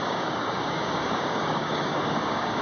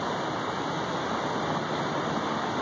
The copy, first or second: first